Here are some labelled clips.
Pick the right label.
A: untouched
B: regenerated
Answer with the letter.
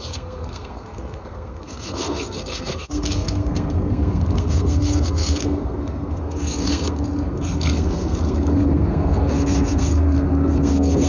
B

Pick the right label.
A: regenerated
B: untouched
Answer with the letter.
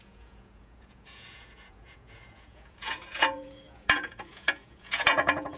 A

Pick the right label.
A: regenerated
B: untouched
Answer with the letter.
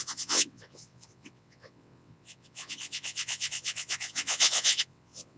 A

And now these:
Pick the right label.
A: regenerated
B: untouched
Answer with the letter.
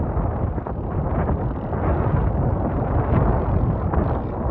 B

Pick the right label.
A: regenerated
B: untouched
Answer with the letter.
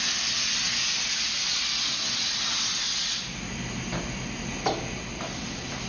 B